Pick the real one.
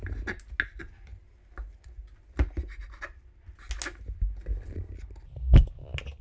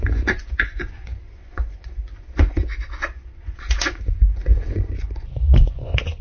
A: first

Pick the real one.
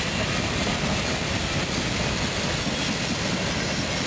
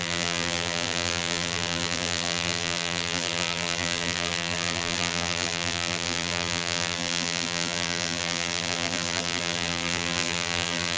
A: first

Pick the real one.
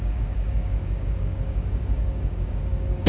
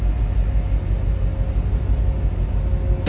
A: second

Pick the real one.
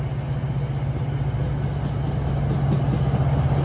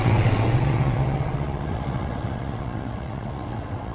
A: first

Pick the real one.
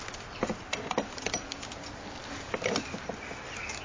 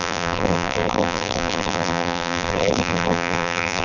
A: first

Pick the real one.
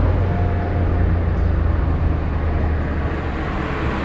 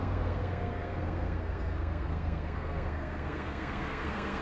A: first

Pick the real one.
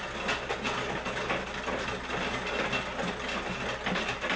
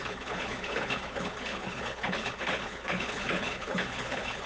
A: first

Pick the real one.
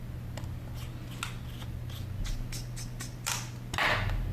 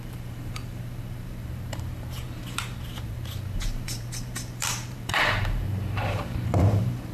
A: first